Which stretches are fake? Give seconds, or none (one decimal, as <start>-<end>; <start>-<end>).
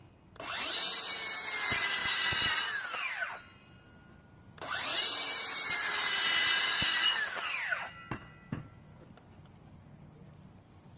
2.0-2.5; 4.9-5.7